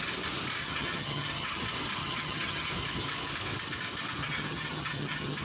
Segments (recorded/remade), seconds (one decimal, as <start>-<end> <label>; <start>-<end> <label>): 0.0-0.6 recorded; 0.6-1.6 remade; 1.6-2.0 recorded; 2.0-2.7 remade; 2.7-4.2 recorded; 4.2-5.4 remade